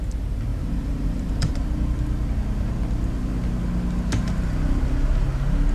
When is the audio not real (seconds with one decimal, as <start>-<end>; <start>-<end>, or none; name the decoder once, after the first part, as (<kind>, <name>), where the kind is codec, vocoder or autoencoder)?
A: 0.5-1.5 (vocoder, BigVGAN v2)

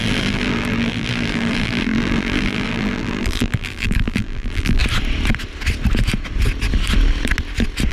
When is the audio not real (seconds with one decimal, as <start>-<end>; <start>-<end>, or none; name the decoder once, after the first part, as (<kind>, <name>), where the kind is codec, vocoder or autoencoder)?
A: 0.0-4.8 (vocoder, BigVGAN v2)

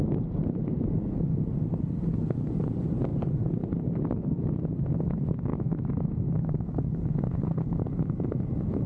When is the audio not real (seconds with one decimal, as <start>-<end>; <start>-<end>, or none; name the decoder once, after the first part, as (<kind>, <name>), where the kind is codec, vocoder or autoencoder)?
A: 5.5-6.9 (autoencoder, DAC-VAE)

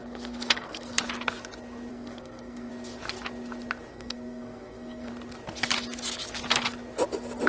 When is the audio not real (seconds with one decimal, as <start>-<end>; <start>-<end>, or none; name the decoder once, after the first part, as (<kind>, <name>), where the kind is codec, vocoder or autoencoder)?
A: 0.0-1.0 (codec, SNAC); 1.9-2.7; 3.9-5.1

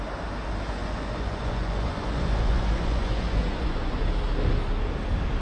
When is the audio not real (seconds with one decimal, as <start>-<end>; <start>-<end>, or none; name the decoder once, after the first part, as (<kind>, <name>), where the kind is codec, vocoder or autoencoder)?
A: 0.8-4.0 (vocoder, Vocos)

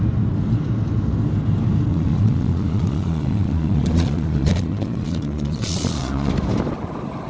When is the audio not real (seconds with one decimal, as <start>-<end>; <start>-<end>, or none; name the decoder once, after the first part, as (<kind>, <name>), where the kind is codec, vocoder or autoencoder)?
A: 1.9-6.3 (vocoder, Vocos)